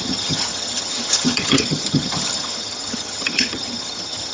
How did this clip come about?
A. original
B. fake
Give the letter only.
B